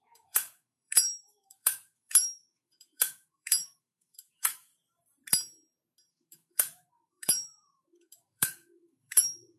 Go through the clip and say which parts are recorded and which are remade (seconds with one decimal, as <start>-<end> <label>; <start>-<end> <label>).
0.0-4.7 remade; 4.7-6.1 recorded; 6.1-9.6 remade